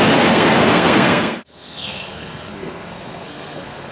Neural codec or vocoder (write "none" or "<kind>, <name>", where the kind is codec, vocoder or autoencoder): codec, SNAC